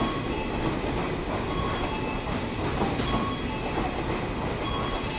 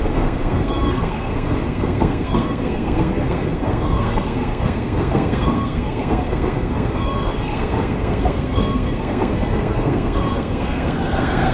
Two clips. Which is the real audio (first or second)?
first